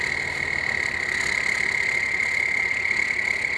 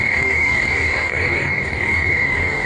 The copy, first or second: second